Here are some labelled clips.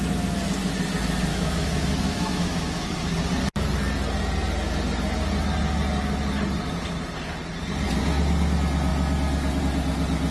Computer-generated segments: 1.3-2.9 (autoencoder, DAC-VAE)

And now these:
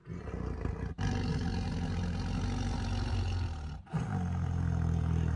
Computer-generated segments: none

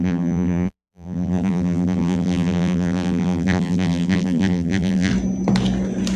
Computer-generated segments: 0.0-5.1 (vocoder, BigVGAN v2)

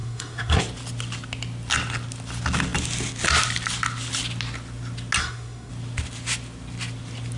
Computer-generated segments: 0.0-0.6 (codec, SNAC); 5.2-5.7

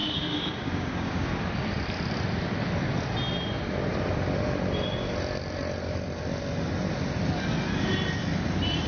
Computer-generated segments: 0.0-1.4 (codec, DAC)

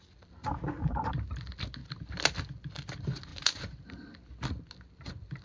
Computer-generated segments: 3.3-3.9 (vocoder, BigVGAN v2)

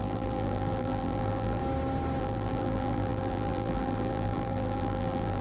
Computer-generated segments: 0.0-1.6 (vocoder, BigVGAN v2); 2.2-5.4